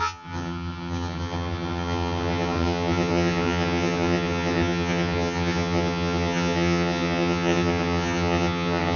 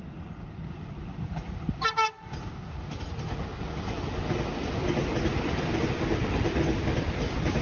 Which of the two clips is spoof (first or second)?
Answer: first